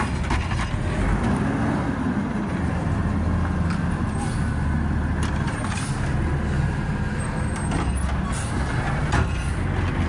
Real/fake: real